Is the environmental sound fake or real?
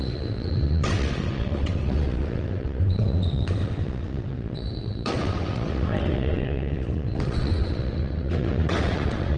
fake